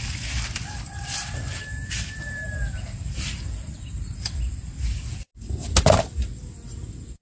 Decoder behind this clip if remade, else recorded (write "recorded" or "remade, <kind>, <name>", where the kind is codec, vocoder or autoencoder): recorded